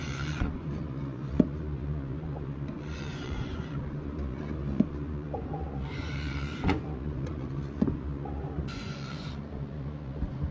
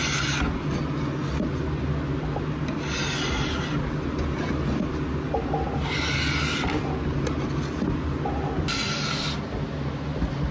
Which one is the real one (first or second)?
second